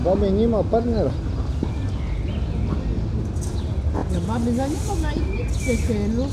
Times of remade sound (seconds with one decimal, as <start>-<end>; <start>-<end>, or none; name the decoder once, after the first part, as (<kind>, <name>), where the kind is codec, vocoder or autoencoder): none

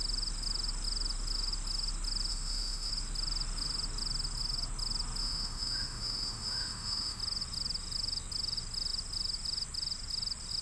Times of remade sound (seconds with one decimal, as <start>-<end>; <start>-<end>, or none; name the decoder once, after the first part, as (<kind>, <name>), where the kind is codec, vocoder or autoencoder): 2.3-2.9 (autoencoder, DAC-VAE); 5.2-7.2

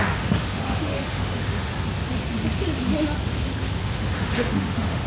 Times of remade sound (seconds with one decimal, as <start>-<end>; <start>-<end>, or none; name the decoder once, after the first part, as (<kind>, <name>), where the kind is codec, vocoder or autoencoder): 0.0-1.7 (autoencoder, DAC-VAE); 3.8-5.1

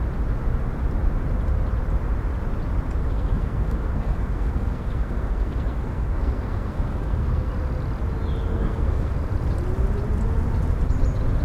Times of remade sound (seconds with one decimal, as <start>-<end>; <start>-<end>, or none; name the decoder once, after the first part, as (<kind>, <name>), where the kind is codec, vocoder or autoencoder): 3.0-7.5 (codec, SNAC); 8.5-9.1

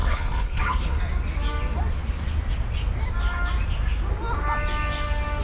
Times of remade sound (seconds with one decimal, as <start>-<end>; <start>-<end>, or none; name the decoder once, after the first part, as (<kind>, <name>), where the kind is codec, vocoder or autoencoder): 0.0-1.0 (codec, HILCodec)

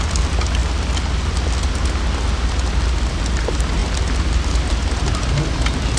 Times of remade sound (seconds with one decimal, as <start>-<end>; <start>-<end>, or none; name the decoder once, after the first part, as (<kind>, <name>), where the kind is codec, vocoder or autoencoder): none